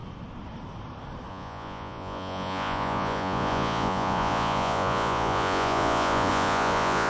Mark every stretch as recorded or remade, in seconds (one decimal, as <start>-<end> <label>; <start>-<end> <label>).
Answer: 0.0-1.3 recorded; 1.3-7.1 remade